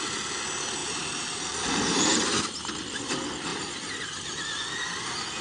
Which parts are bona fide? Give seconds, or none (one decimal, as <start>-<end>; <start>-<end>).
0.0-0.8; 2.4-5.4